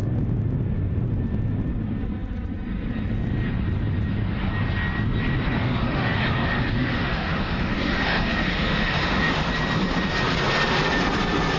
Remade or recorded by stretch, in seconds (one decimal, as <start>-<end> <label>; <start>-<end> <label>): 0.0-5.6 recorded; 5.6-9.5 remade; 9.5-11.6 recorded